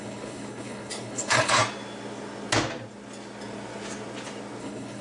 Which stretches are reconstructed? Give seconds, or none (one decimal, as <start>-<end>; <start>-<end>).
0.0-1.6; 4.6-5.0